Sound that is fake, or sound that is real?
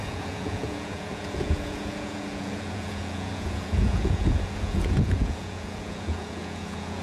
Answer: fake